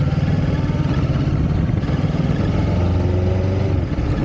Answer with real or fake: real